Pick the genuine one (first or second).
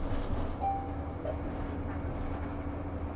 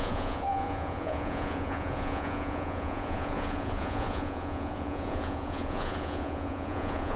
first